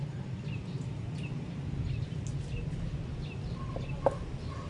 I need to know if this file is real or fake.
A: real